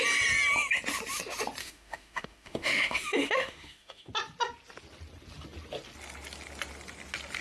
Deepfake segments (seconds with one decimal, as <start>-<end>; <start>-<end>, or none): 1.6-4.1

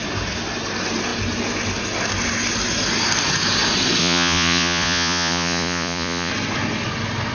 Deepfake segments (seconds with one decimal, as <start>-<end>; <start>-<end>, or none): 4.0-6.3